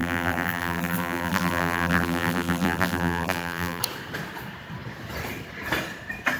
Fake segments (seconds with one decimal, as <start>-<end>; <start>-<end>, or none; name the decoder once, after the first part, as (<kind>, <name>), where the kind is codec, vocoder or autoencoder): 0.0-3.8 (vocoder, BigVGAN v2)